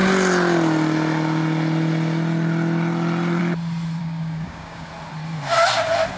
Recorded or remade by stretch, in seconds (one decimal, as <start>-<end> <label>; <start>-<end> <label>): 0.0-4.0 recorded; 4.0-4.9 remade; 4.9-6.2 recorded